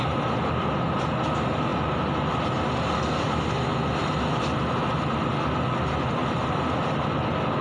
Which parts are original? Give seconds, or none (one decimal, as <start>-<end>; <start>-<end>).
0.0-7.6